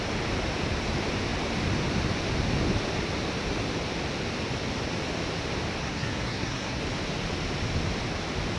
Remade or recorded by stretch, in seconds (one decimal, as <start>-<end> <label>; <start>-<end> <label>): 0.0-5.8 recorded; 5.8-6.8 remade; 6.8-8.6 recorded